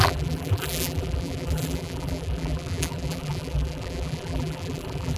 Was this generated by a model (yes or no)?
yes